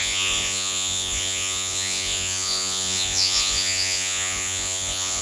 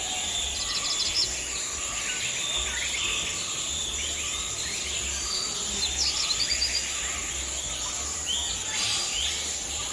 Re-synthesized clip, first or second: first